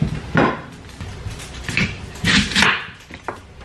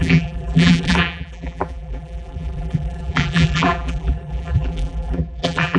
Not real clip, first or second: second